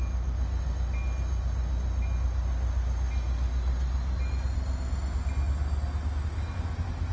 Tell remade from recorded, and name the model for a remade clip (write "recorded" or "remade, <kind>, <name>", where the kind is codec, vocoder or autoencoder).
recorded